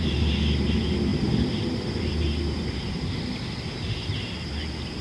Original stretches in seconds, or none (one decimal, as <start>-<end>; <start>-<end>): 0.0-5.0